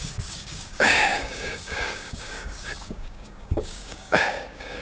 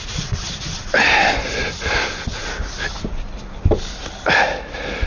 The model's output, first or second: first